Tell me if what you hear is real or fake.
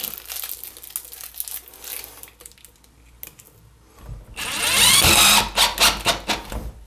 real